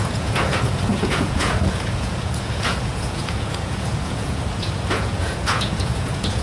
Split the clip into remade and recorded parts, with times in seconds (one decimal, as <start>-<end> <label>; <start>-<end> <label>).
0.0-6.4 remade